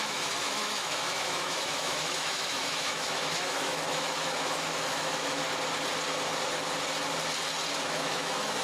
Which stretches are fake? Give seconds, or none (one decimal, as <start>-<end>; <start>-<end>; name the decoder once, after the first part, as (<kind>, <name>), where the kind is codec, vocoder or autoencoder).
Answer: 0.0-5.4 (autoencoder, DAC-VAE); 7.8-8.6